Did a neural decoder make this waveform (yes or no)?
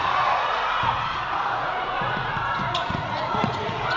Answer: yes